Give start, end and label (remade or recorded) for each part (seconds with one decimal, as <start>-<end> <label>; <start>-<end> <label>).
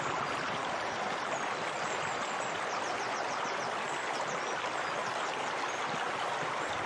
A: 0.0-6.9 recorded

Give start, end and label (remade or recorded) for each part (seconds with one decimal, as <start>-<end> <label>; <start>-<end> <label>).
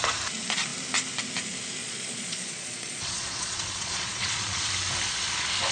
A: 0.0-1.8 recorded; 1.8-4.7 remade; 4.7-5.7 recorded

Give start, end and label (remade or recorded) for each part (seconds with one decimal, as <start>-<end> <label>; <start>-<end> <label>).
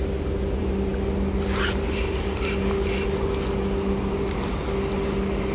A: 0.0-5.5 recorded